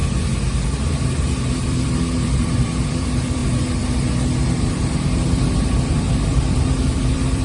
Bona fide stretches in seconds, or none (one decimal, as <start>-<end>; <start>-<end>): 0.0-1.6; 3.4-4.7